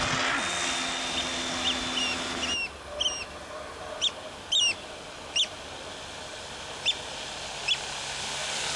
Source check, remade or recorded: recorded